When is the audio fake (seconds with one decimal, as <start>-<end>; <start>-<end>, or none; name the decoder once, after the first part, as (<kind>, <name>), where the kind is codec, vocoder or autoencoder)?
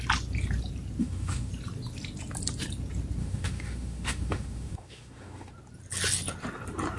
1.0-1.5 (autoencoder, DAC-VAE); 3.2-5.5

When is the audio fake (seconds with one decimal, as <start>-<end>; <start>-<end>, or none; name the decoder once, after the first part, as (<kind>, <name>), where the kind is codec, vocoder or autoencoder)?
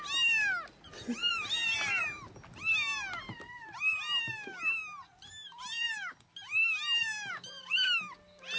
1.2-2.0 (vocoder, BigVGAN v2)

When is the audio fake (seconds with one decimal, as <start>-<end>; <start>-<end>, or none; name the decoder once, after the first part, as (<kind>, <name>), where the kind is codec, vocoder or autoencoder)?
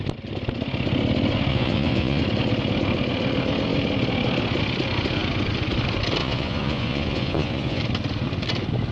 1.5-2.2 (vocoder, Vocos); 6.2-7.8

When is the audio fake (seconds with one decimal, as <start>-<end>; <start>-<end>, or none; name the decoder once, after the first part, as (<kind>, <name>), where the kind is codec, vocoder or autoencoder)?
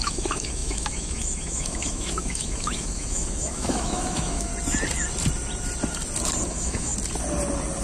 0.0-4.5 (autoencoder, DAC-VAE); 6.5-6.9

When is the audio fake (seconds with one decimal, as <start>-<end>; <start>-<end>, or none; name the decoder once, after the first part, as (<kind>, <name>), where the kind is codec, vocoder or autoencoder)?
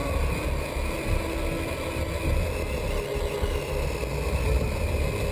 none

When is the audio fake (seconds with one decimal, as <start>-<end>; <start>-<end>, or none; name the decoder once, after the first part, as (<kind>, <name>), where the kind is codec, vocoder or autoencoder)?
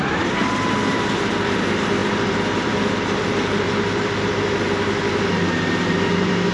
0.0-6.5 (vocoder, BigVGAN v2)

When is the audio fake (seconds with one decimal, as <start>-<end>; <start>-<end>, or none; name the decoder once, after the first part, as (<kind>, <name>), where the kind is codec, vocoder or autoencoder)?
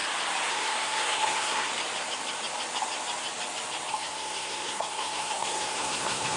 0.5-1.7 (codec, SNAC); 3.9-6.4